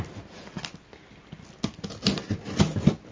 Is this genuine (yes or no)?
yes